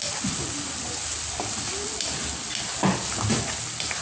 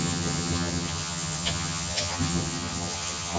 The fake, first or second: second